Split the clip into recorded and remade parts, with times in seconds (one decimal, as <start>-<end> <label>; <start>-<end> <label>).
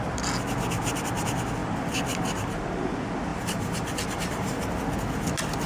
0.0-3.3 recorded; 3.3-4.8 remade; 4.8-5.7 recorded